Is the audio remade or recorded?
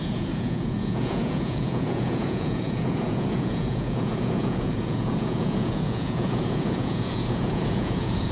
remade